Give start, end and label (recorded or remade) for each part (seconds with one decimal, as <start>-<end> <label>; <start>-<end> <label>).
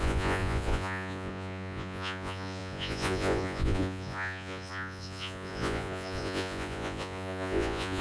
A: 0.0-8.0 remade